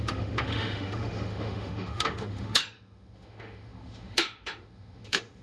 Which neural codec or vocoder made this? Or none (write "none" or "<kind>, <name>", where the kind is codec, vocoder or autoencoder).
autoencoder, DAC-VAE